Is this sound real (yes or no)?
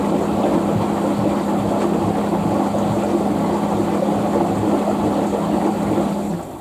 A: yes